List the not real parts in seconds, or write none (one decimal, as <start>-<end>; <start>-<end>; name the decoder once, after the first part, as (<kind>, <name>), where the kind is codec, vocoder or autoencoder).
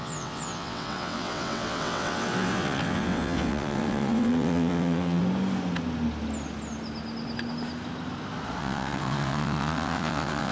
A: 0.0-5.2 (vocoder, WaveNeXt); 8.6-10.5